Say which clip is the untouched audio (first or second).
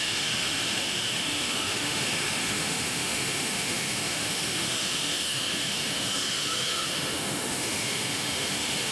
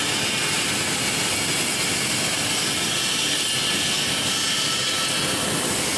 second